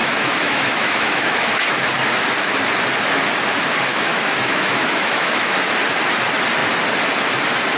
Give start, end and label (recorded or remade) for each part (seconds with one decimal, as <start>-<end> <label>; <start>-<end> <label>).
0.0-1.5 remade; 1.5-3.9 recorded; 3.9-5.7 remade; 5.7-7.8 recorded